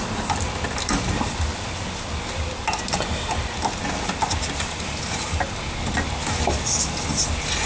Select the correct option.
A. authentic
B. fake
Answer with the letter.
A